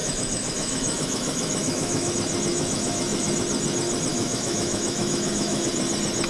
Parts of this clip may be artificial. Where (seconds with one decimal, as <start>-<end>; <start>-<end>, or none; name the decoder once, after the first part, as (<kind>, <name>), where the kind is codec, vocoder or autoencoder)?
0.0-2.1 (autoencoder, DAC-VAE); 2.5-3.3; 4.1-5.7